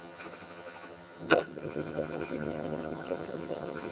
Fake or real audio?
fake